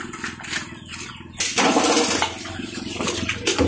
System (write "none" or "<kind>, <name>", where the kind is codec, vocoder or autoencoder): none